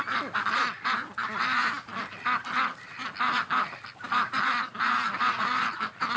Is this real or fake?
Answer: real